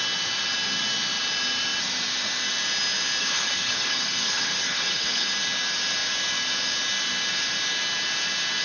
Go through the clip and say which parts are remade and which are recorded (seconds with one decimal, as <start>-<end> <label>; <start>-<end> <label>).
0.0-3.2 recorded; 3.2-5.3 remade; 5.3-8.6 recorded